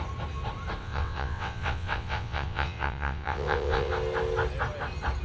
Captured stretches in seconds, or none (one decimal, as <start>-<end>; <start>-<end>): 0.0-0.8; 3.9-5.2